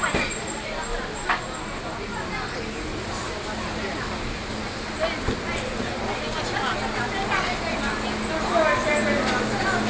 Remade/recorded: recorded